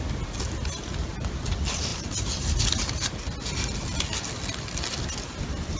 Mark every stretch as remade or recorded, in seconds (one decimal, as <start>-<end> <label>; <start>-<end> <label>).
0.0-5.8 recorded